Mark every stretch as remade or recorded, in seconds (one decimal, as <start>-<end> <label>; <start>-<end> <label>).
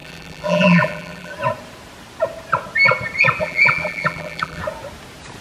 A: 0.0-1.3 remade; 1.3-3.4 recorded; 3.4-4.6 remade; 4.6-5.4 recorded